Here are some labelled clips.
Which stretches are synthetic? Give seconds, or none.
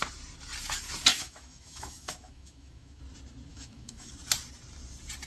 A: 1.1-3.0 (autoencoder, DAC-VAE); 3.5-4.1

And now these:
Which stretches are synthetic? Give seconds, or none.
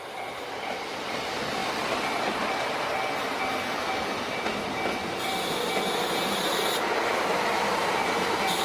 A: none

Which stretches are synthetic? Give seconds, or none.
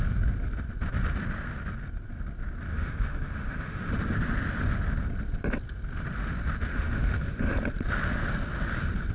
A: 2.7-3.9 (autoencoder, DAC-VAE); 6.7-7.5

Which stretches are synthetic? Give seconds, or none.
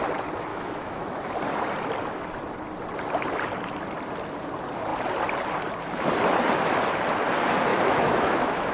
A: 0.5-1.3 (autoencoder, DAC-VAE); 7.7-8.7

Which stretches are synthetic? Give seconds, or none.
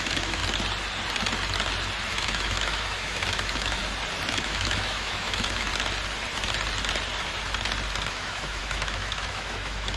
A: 0.0-0.4 (autoencoder, DAC-VAE); 2.1-3.8; 4.3-5.7; 8.1-10.0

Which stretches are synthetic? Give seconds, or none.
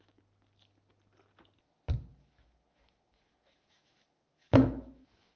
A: 2.1-5.4 (autoencoder, DAC-VAE)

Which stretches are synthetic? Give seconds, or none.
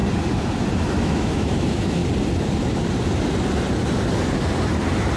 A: 0.9-2.0 (autoencoder, DAC-VAE)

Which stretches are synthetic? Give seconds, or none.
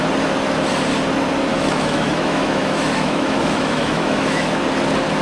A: 1.5-4.6 (autoencoder, DAC-VAE)